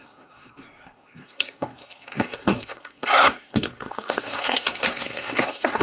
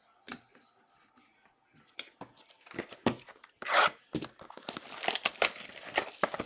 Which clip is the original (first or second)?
second